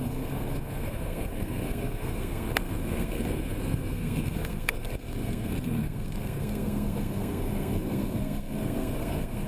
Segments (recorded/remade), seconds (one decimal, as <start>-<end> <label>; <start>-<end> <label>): 0.0-9.5 remade